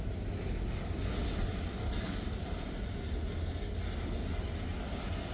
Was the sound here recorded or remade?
recorded